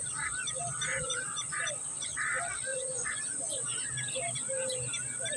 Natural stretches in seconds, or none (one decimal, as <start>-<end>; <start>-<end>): 0.0-0.9; 1.7-2.7; 3.9-5.4